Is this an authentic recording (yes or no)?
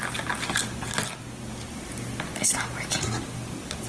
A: yes